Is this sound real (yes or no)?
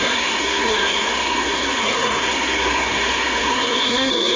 no